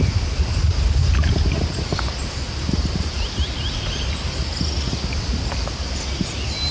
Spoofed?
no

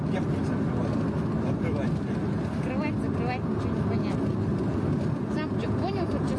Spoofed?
no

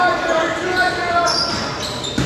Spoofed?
no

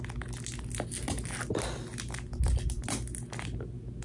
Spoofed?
no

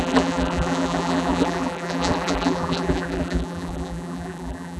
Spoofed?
yes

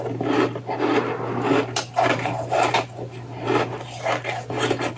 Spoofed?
no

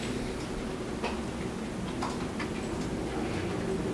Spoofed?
no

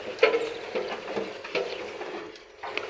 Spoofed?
no